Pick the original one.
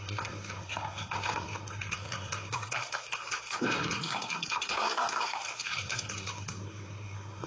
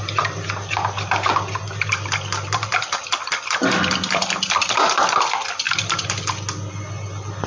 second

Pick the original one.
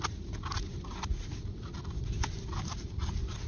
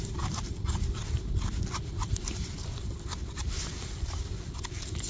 first